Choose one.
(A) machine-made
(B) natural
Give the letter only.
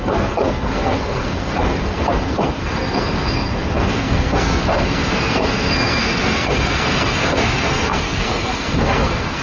A